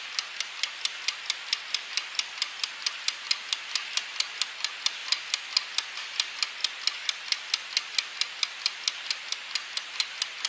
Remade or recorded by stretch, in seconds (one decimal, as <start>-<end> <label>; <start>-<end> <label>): 0.0-10.5 recorded